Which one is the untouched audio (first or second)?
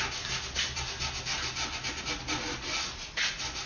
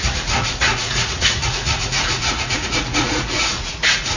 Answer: first